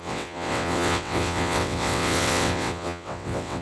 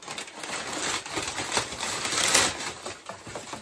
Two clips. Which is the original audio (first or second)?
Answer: second